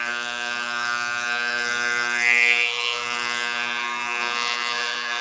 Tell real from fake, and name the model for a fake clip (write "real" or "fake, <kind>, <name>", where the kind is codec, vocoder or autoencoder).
fake, codec, SNAC